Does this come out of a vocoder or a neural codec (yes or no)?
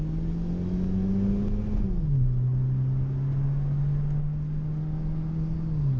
no